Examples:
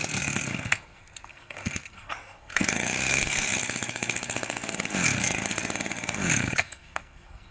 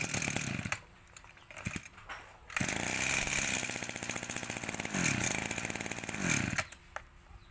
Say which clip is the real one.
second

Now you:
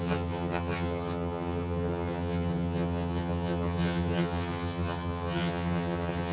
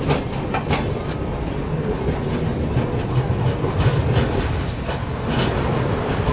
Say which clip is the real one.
second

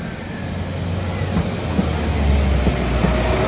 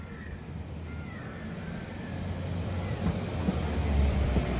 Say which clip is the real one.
first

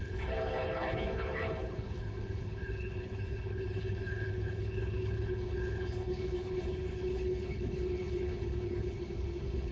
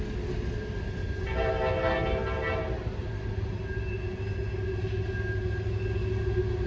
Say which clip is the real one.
second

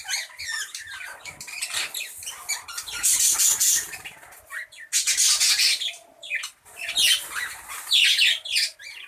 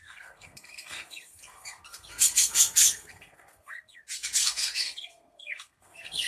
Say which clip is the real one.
first